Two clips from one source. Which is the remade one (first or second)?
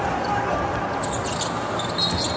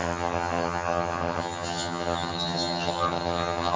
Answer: second